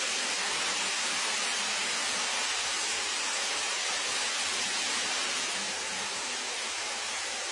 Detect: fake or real real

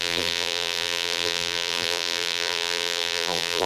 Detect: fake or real fake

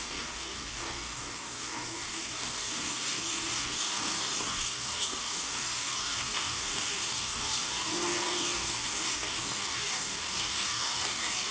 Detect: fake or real fake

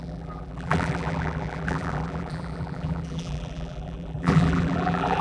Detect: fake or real fake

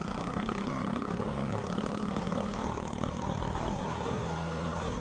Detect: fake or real fake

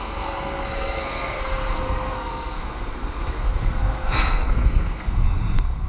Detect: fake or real fake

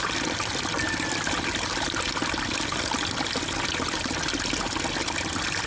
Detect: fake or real real